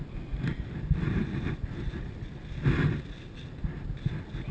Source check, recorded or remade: recorded